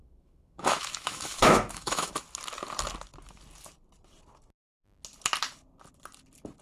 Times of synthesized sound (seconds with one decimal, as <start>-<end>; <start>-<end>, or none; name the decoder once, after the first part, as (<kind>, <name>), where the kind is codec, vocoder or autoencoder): 0.0-2.1 (autoencoder, DAC-VAE)